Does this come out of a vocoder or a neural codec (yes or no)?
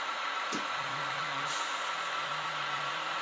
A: yes